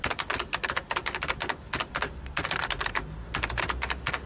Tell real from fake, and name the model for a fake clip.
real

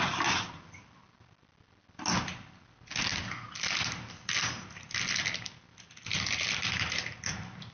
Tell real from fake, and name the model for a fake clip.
real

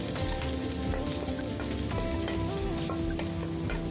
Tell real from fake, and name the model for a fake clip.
real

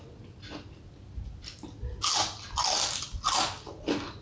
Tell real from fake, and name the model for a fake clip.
real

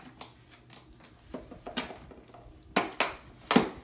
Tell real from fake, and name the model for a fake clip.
real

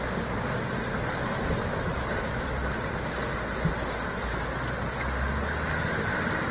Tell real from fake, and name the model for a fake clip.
real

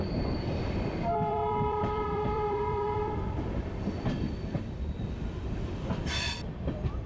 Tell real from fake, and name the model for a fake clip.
fake, vocoder, BigVGAN v2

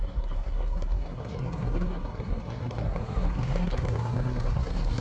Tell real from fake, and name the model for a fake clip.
fake, codec, SNAC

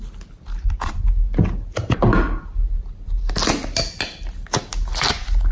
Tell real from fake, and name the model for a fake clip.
real